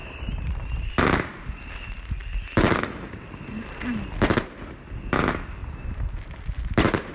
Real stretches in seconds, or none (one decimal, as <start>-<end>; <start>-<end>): 0.9-7.1